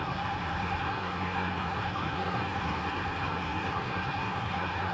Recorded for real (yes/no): no